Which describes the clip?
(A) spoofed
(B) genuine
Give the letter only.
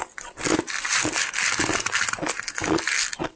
B